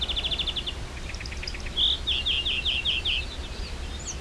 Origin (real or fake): real